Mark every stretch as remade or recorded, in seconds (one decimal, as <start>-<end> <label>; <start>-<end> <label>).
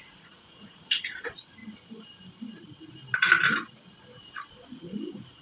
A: 0.0-1.6 remade; 1.6-4.5 recorded; 4.5-5.4 remade